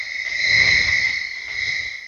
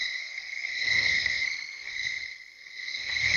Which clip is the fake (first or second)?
second